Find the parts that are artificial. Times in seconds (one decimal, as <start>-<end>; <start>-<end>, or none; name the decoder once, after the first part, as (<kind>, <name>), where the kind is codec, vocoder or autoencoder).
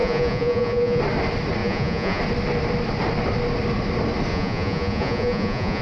0.0-1.0 (vocoder, Vocos); 1.6-2.2; 4.3-5.8